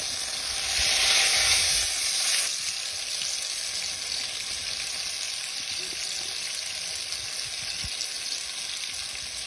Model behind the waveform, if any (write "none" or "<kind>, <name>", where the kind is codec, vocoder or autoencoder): none